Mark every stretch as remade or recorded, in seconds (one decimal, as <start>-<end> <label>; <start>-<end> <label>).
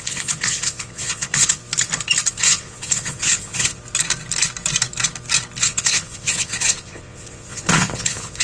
0.0-1.6 remade; 1.6-2.3 recorded; 2.3-3.8 remade; 3.8-5.6 recorded; 5.6-8.4 remade